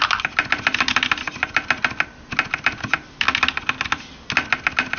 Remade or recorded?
recorded